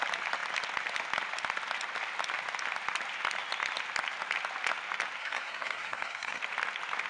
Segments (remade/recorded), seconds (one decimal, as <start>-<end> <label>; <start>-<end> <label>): 0.0-5.2 recorded; 5.2-6.4 remade; 6.4-7.1 recorded